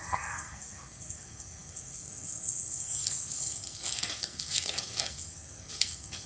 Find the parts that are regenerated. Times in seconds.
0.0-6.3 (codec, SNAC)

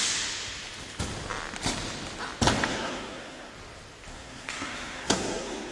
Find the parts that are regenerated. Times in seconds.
2.7-3.5 (codec, SNAC); 4.1-5.7

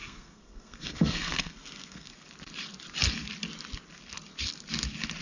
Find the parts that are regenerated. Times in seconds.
0.0-2.1 (codec, SNAC)

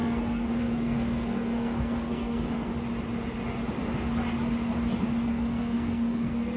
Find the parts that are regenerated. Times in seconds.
0.0-2.7 (codec, SNAC); 5.3-6.6

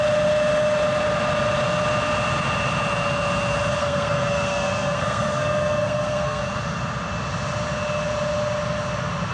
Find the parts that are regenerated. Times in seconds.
3.8-6.4 (codec, SNAC)

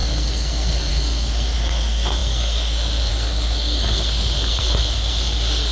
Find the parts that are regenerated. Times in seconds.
0.0-5.7 (codec, SNAC)

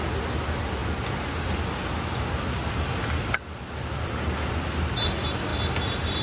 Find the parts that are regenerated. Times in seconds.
none

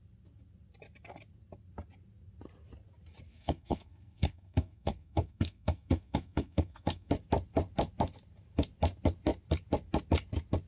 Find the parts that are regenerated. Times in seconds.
3.3-7.1 (codec, SNAC)